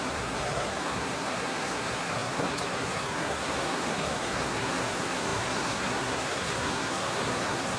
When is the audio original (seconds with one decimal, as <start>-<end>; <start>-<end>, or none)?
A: none